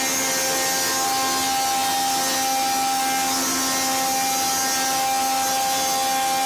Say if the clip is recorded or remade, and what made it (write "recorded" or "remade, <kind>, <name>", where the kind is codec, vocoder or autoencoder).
recorded